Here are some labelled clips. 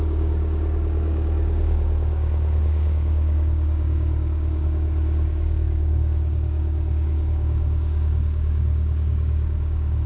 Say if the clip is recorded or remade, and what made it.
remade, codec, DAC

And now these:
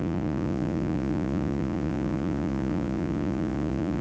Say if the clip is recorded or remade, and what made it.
remade, vocoder, Vocos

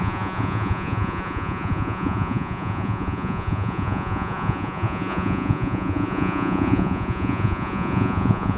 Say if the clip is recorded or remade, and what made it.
remade, vocoder, Vocos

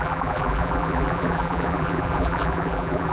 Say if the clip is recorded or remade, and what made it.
remade, vocoder, BigVGAN v2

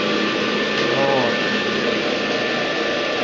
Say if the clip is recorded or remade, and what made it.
recorded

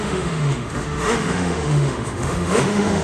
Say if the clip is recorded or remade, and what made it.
remade, autoencoder, DAC-VAE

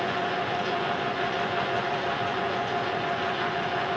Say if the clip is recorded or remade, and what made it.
remade, vocoder, Vocos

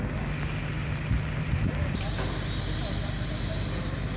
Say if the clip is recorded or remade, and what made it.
recorded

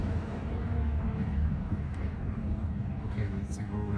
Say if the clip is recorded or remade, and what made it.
remade, codec, DAC